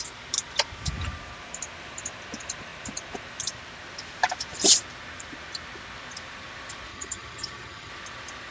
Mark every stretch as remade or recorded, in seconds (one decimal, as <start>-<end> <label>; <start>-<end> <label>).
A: 0.0-6.9 recorded; 6.9-7.9 remade; 7.9-8.5 recorded